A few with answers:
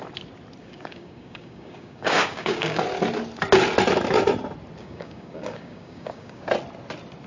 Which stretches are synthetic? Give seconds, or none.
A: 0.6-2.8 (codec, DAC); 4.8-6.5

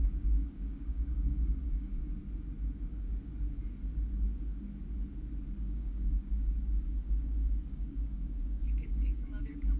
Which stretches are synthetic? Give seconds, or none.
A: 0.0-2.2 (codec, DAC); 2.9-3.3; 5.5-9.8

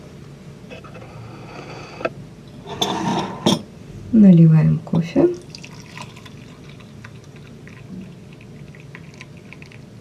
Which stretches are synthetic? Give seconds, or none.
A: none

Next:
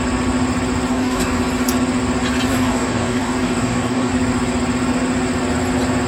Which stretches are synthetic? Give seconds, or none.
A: 0.9-1.4 (codec, DAC); 2.5-4.1

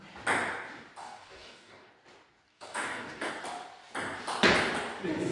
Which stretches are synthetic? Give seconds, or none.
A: 1.0-1.9 (codec, DAC); 2.5-3.3

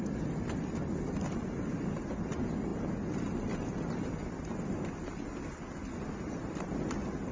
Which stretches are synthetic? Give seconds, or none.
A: none